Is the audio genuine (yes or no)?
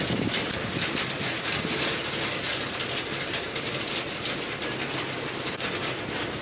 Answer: yes